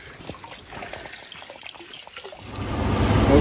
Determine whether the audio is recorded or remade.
recorded